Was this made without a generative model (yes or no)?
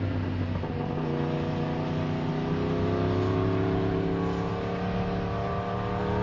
yes